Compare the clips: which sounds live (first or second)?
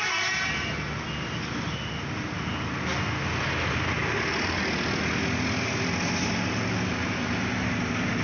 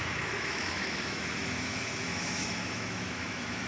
first